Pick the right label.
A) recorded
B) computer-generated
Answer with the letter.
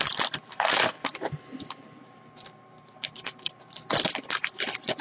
B